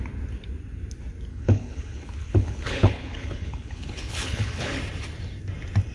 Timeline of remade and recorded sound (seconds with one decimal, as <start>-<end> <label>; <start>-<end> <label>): 0.0-1.3 recorded; 1.3-4.8 remade; 4.8-5.9 recorded